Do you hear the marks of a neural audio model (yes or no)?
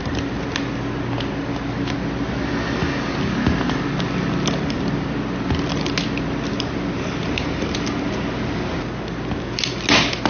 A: no